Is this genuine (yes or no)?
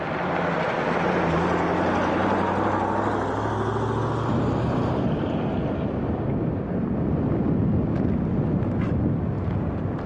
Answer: yes